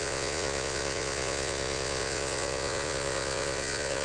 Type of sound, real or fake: fake